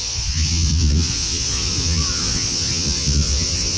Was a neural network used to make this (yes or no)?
yes